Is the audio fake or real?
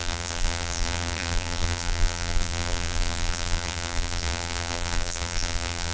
fake